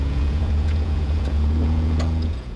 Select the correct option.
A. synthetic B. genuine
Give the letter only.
A